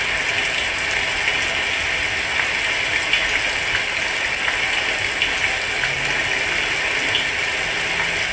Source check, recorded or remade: recorded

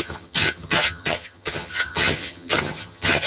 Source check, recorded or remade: remade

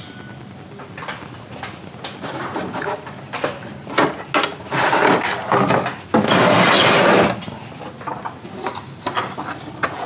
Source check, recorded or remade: recorded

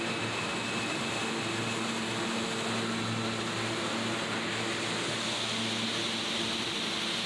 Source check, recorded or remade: recorded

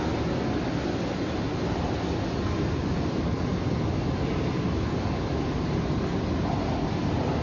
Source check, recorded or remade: recorded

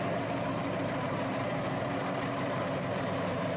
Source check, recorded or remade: remade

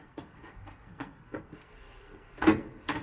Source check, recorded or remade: remade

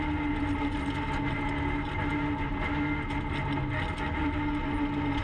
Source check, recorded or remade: recorded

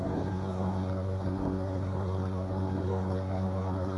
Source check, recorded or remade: remade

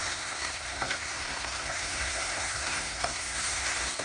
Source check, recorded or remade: remade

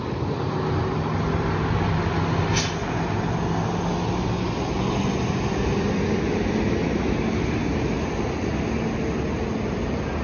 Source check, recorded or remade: recorded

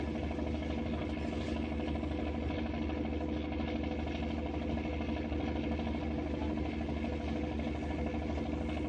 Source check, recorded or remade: recorded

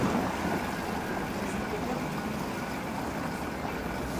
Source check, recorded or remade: recorded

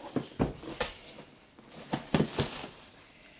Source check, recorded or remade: remade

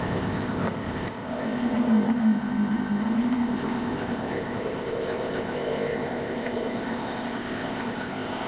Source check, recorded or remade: remade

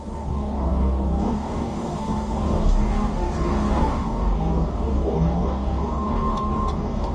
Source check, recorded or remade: remade